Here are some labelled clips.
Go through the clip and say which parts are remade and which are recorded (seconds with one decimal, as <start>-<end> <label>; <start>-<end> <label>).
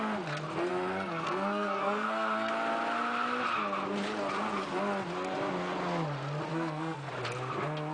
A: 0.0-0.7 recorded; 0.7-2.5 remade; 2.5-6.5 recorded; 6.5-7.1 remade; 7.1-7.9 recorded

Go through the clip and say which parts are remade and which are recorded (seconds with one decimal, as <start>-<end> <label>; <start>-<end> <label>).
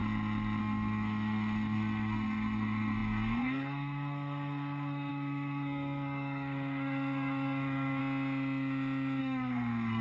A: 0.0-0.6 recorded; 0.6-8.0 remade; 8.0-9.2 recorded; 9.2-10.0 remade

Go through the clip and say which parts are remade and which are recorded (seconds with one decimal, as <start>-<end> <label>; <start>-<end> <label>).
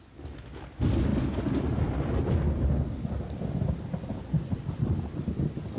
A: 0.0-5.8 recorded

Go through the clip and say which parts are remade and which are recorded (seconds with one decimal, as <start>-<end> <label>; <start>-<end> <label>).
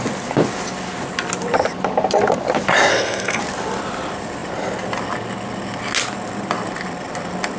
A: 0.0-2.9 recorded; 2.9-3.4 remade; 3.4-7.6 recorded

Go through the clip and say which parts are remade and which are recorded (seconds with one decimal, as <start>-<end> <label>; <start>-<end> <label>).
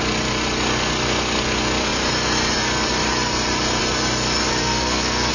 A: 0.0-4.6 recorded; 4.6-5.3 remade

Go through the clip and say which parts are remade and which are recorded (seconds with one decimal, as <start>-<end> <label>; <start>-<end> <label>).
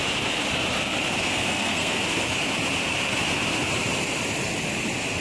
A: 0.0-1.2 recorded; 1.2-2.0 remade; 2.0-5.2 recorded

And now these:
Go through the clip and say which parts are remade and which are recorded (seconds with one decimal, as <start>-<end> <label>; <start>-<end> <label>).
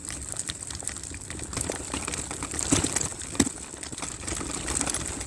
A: 0.0-5.3 recorded